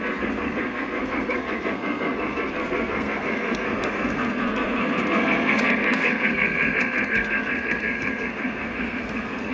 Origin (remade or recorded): remade